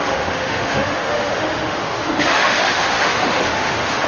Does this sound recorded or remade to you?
remade